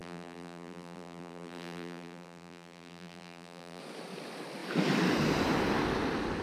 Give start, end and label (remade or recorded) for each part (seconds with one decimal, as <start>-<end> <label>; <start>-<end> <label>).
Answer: 0.0-3.8 remade; 3.8-6.4 recorded